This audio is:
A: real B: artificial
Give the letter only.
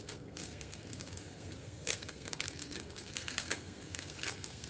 B